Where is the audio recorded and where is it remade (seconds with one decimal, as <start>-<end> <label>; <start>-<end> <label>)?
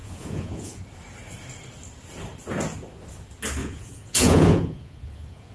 0.0-0.8 remade; 0.8-3.6 recorded; 3.6-5.5 remade